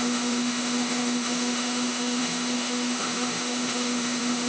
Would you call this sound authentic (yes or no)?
no